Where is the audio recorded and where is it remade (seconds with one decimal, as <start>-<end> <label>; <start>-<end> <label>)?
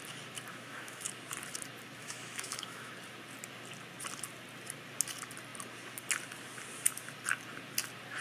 0.0-0.5 recorded; 0.5-1.1 remade; 1.1-2.0 recorded; 2.0-2.9 remade; 2.9-8.2 recorded